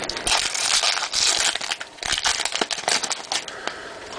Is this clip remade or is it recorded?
recorded